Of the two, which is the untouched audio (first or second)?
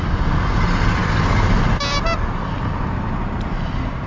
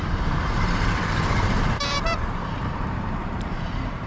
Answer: first